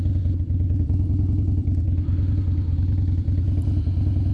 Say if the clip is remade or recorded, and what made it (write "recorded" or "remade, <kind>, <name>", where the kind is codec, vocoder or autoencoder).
recorded